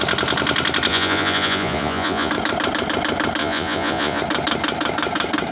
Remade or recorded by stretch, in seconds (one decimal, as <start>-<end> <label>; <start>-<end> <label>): 0.0-0.9 recorded; 0.9-2.3 remade; 2.3-3.4 recorded; 3.4-4.2 remade; 4.2-5.5 recorded